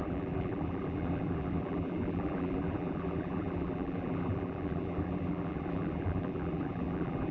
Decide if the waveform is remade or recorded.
remade